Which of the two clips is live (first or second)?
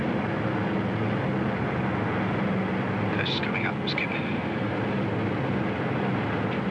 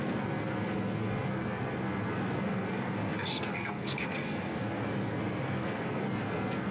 first